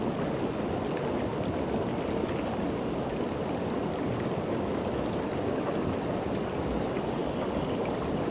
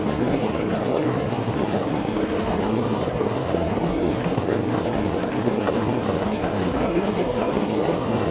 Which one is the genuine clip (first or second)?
first